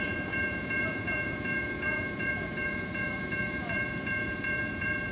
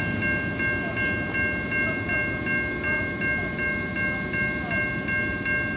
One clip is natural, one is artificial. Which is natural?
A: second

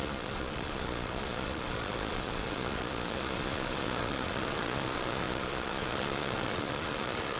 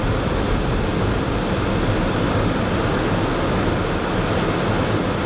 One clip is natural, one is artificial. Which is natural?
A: second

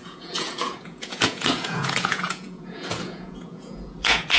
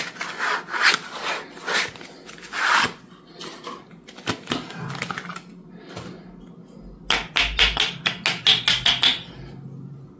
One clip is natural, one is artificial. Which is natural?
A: second